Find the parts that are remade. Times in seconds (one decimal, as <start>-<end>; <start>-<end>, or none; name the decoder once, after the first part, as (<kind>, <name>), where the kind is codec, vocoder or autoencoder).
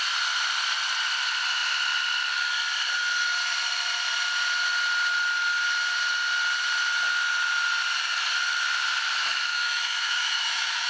9.5-10.9 (autoencoder, DAC-VAE)